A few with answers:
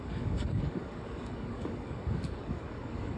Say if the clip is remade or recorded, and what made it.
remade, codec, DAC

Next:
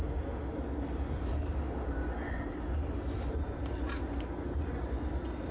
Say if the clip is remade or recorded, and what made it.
recorded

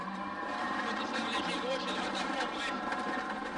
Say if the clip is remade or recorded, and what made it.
remade, vocoder, BigVGAN v2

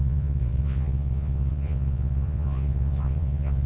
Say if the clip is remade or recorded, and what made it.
remade, vocoder, Vocos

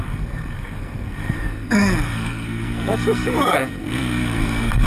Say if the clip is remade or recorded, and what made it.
remade, codec, SNAC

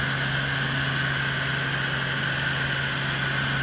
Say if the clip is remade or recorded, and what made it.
recorded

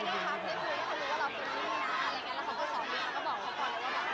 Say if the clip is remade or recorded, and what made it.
recorded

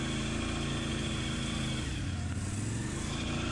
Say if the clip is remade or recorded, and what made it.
recorded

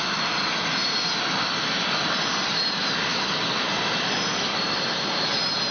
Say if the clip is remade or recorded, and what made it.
recorded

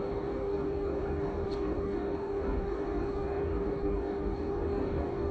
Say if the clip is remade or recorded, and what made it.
remade, codec, DAC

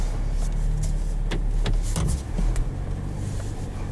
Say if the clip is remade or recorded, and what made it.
recorded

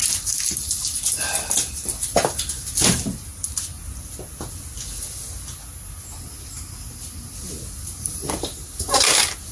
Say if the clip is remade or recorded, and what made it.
recorded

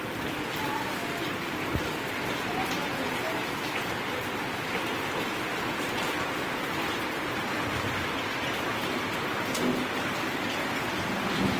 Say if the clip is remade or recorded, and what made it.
recorded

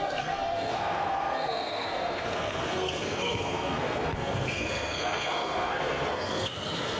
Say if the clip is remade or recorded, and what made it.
remade, codec, SNAC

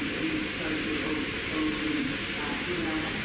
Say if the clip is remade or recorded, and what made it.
recorded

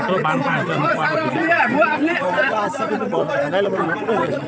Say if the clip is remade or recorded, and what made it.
remade, vocoder, WaveNeXt